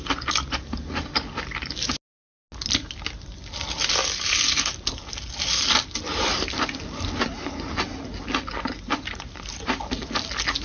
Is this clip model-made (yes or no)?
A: no